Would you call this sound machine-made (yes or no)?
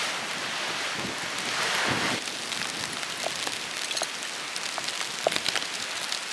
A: no